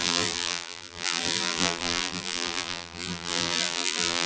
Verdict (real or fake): fake